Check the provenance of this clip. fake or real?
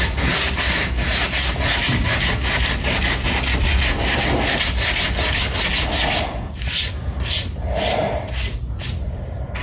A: real